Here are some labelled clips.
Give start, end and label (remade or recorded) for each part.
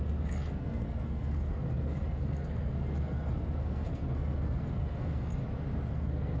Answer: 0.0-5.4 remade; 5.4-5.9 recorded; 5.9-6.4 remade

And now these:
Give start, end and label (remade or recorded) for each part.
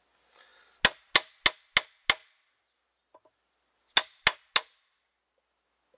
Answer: 0.0-6.0 recorded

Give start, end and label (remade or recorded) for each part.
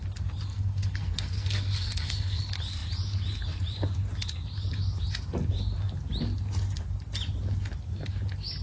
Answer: 0.0-0.5 recorded; 0.5-2.4 remade; 2.4-8.6 recorded